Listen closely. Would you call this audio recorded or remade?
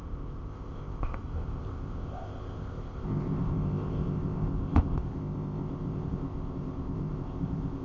remade